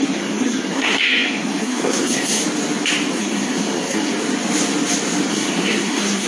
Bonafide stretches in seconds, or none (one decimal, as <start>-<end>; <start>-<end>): 2.4-3.2; 4.1-5.3